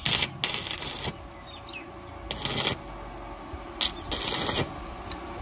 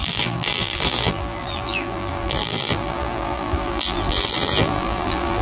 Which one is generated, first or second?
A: second